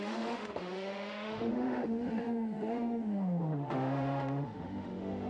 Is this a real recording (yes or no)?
no